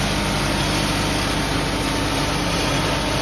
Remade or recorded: recorded